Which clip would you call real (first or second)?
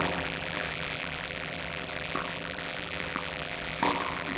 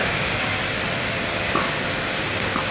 second